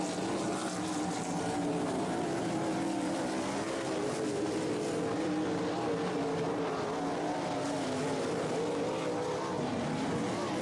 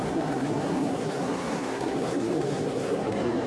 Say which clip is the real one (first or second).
first